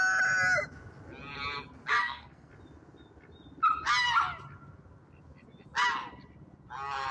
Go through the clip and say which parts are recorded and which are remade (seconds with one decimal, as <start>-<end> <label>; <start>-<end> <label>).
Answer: 0.0-2.0 recorded; 2.0-2.5 remade; 2.5-7.1 recorded